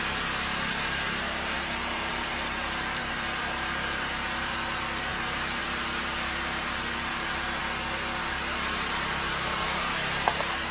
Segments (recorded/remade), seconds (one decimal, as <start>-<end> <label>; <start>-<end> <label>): 0.0-7.6 remade; 7.6-8.2 recorded; 8.2-10.7 remade